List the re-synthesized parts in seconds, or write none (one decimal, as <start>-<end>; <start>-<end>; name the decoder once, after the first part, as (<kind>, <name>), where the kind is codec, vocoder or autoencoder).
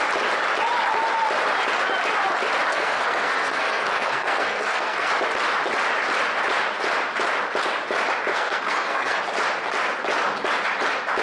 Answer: 2.7-5.1 (codec, SNAC); 8.3-9.2